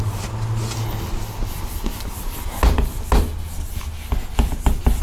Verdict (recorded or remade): recorded